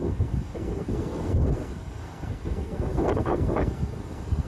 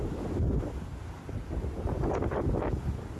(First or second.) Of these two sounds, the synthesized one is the first